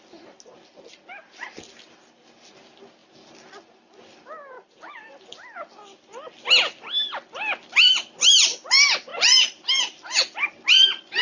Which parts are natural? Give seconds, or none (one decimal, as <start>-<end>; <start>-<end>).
0.0-9.1; 9.8-11.2